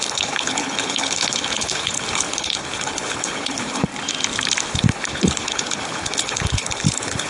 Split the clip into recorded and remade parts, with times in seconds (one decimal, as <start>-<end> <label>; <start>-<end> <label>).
0.0-3.9 remade; 3.9-4.7 recorded; 4.7-7.3 remade